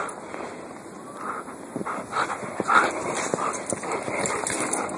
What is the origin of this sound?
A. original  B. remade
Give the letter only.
B